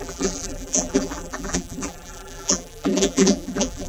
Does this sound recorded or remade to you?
remade